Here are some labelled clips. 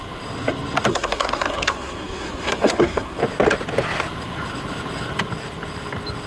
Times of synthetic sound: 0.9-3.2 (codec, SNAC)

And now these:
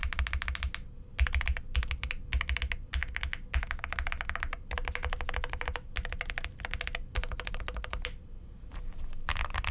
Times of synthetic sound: none

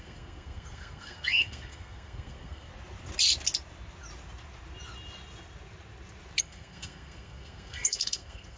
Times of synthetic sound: 0.0-2.7 (codec, SNAC); 6.4-8.6

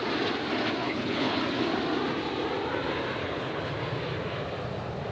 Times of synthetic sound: 0.8-1.4 (codec, HILCodec); 3.2-3.7